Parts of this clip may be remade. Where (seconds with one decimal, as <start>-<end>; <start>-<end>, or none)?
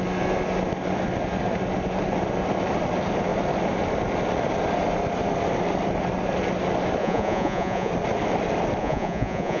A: 7.0-7.9; 8.8-9.6